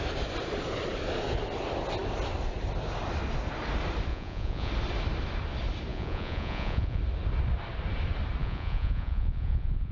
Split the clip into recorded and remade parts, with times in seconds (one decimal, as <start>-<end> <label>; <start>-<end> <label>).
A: 0.0-4.1 recorded; 4.1-4.7 remade; 4.7-5.9 recorded; 5.9-7.0 remade; 7.0-8.4 recorded; 8.4-9.9 remade